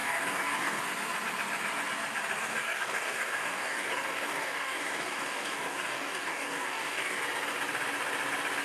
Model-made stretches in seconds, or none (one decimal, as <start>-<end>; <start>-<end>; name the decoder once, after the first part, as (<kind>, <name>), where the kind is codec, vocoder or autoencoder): 0.0-0.8 (codec, DAC); 2.4-7.2